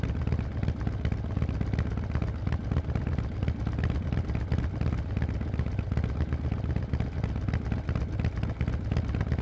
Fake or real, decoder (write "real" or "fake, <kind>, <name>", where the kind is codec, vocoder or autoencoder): real